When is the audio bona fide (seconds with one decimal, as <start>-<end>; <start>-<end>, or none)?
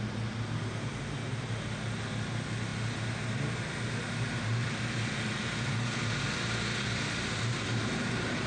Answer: 0.0-8.5